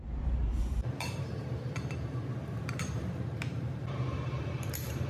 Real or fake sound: fake